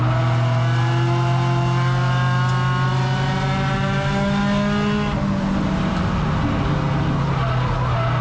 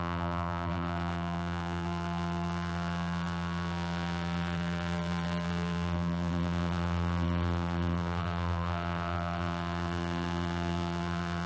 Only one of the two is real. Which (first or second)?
first